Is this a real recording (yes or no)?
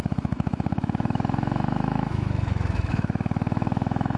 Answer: no